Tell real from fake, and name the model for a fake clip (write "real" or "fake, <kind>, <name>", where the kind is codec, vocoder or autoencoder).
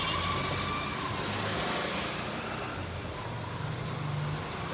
real